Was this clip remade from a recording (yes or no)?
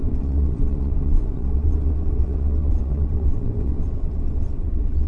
yes